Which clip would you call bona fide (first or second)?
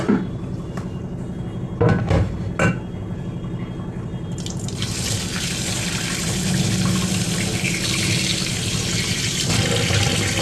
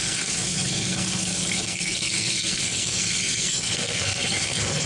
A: first